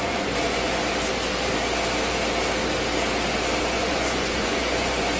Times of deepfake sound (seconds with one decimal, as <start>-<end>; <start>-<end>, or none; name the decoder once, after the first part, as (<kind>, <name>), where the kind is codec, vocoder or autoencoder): 0.0-0.8 (vocoder, Vocos); 3.6-5.2